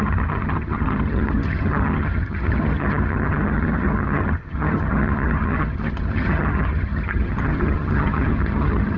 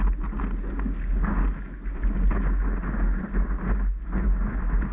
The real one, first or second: second